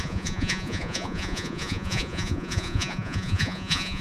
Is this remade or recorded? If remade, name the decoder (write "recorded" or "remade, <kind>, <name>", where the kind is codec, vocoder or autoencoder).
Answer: remade, vocoder, Vocos